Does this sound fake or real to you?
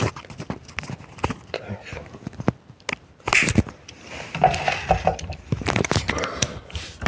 real